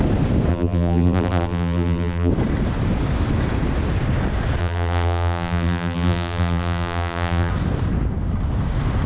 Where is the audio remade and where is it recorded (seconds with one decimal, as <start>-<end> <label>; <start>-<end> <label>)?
0.0-0.5 recorded; 0.5-2.3 remade; 2.3-4.6 recorded; 4.6-7.5 remade; 7.5-9.1 recorded